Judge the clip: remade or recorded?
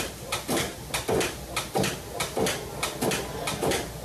recorded